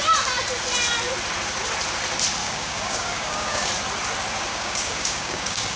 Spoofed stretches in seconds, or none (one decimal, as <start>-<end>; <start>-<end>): 2.4-3.7; 4.5-5.8